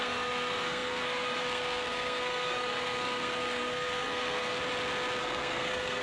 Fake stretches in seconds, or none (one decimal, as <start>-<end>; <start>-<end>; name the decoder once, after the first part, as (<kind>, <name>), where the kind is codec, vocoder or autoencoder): 0.0-4.6 (codec, SNAC); 5.2-6.0